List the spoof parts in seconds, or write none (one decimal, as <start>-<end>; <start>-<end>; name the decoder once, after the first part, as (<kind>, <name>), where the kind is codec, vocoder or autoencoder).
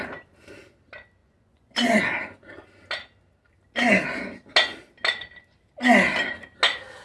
1.2-2.0 (vocoder, Vocos)